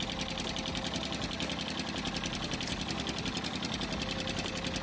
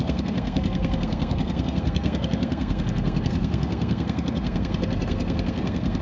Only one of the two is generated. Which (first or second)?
second